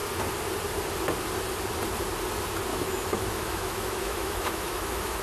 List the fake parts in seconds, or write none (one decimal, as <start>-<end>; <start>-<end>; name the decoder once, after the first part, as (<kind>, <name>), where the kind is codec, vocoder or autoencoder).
2.7-5.2 (autoencoder, DAC-VAE)